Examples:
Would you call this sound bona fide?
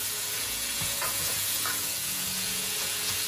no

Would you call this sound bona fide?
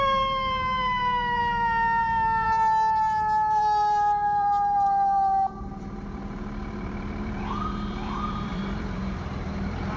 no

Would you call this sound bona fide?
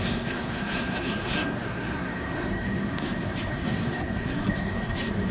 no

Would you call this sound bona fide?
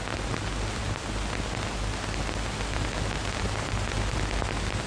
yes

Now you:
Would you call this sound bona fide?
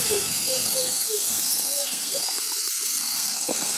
no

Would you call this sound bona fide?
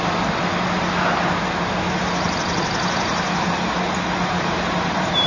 yes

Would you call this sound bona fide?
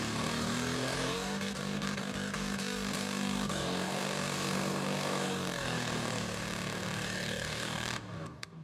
no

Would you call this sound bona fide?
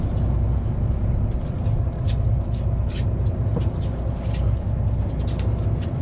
yes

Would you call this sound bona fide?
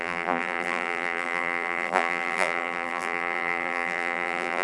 no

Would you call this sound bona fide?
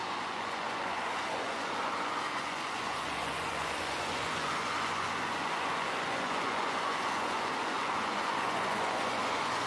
no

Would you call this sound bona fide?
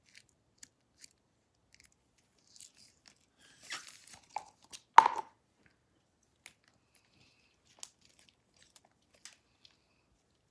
yes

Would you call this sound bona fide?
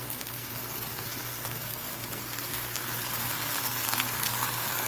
no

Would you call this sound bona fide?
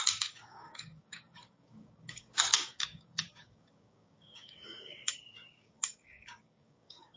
no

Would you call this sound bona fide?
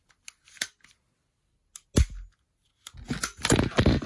yes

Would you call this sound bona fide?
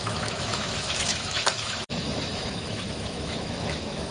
no